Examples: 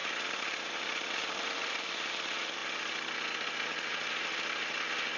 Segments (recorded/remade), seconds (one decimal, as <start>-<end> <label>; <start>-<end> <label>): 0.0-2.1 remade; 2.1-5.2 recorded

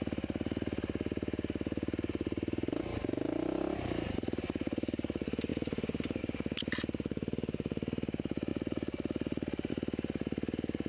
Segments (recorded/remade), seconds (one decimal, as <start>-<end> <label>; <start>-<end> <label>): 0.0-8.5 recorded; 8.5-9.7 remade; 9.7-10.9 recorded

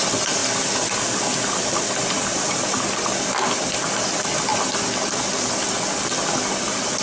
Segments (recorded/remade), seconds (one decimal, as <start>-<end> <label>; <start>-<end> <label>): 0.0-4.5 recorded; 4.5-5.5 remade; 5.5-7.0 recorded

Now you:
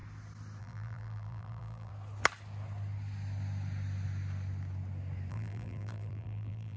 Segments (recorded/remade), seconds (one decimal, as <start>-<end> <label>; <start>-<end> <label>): 0.0-0.6 recorded; 0.6-1.9 remade; 1.9-5.3 recorded; 5.3-6.8 remade